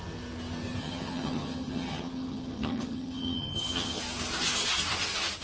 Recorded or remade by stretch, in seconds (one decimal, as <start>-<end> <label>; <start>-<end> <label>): 0.0-0.8 recorded; 0.8-4.0 remade; 4.0-5.4 recorded